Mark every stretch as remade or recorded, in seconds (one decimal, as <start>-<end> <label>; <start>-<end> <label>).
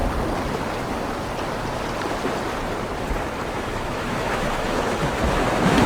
0.0-3.5 recorded; 3.5-5.9 remade